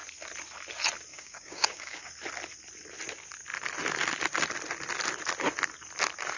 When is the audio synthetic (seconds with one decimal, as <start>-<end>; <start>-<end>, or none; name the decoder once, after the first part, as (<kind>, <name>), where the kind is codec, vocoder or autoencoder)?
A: 1.1-2.1 (codec, DAC)